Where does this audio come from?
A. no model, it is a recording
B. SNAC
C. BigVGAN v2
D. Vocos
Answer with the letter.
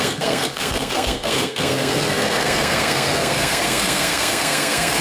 B